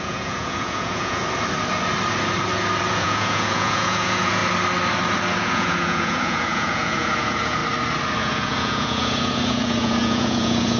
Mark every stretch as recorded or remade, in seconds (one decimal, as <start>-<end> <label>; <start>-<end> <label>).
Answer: 0.0-1.2 remade; 1.2-2.9 recorded; 2.9-4.4 remade; 4.4-5.4 recorded; 5.4-7.6 remade; 7.6-8.2 recorded; 8.2-10.8 remade